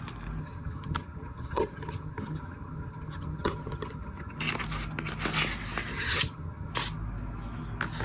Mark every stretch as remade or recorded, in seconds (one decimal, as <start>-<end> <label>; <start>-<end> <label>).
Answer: 0.0-0.4 recorded; 0.4-4.4 remade; 4.4-5.9 recorded; 5.9-6.7 remade; 6.7-8.0 recorded